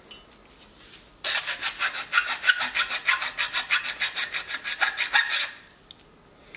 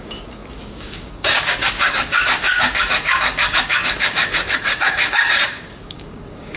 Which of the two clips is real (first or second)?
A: first